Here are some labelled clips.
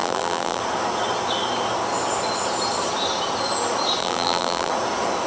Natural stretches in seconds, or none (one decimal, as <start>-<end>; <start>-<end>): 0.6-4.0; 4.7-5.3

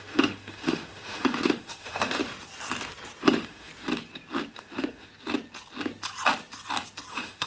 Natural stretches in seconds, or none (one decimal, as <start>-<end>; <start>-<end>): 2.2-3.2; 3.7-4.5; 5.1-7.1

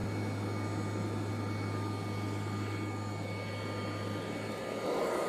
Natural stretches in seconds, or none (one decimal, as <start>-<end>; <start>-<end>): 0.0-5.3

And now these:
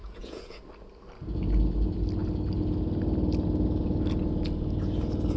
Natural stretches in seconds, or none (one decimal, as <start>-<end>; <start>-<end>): 0.6-5.4

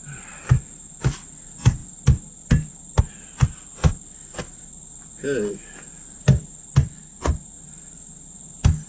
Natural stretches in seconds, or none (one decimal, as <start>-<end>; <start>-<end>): 0.0-8.9

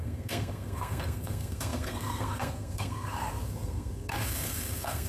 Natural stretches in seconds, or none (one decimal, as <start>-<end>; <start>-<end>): none